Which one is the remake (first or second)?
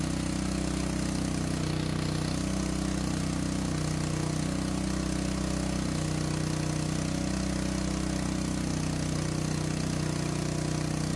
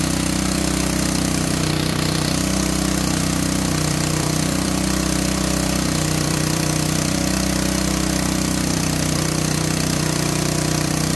second